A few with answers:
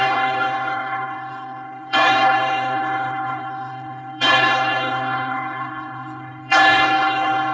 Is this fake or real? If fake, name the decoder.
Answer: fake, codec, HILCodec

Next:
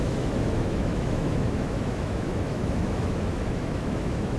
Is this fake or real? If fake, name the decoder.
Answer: fake, autoencoder, DAC-VAE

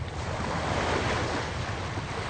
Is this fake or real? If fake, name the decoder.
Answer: real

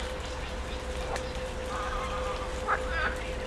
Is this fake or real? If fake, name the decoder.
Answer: real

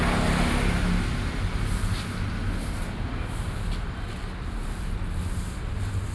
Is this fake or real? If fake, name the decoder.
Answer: real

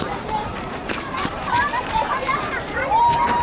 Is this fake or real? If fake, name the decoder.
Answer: fake, vocoder, BigVGAN v2